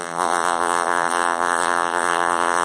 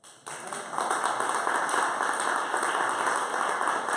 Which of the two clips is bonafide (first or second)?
second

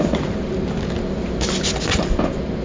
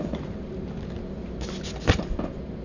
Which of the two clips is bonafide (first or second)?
first